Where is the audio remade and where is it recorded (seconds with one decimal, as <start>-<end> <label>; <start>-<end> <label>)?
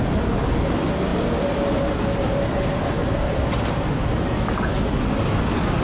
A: 0.0-5.8 recorded